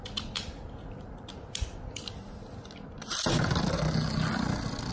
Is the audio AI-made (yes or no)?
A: no